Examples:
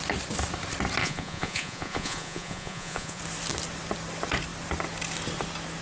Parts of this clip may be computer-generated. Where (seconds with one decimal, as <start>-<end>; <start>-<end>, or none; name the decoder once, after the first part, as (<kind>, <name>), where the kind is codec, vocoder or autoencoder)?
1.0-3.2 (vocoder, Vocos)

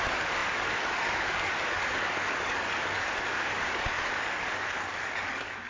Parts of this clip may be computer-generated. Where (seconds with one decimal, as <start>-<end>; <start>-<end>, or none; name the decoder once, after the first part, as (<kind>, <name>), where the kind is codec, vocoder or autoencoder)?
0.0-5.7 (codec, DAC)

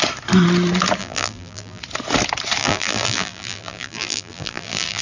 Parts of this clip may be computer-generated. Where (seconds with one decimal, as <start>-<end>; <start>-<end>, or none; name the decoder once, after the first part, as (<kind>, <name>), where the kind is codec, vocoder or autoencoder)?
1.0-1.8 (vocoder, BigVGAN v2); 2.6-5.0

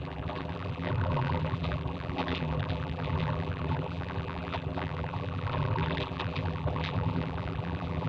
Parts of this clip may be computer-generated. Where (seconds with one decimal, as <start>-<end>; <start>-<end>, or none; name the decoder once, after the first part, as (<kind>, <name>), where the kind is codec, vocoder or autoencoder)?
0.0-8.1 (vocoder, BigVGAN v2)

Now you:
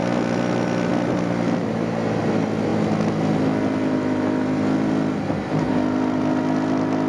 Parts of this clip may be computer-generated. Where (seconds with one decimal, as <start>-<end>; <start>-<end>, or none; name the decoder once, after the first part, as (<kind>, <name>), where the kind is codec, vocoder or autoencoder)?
none